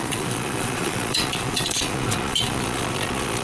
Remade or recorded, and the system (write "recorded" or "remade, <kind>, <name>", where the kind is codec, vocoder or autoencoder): remade, vocoder, Vocos